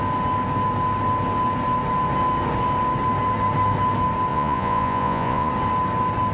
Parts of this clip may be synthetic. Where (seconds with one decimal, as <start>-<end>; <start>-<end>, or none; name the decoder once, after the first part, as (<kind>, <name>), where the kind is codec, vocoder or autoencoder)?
4.3-5.5 (vocoder, Vocos)